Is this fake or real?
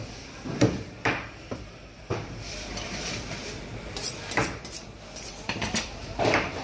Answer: fake